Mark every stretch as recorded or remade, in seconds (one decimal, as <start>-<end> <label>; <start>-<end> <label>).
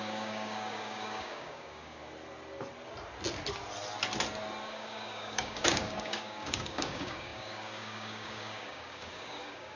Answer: 0.0-2.0 remade; 2.0-4.7 recorded; 4.7-9.8 remade